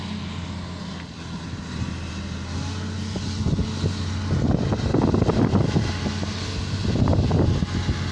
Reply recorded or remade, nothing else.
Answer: recorded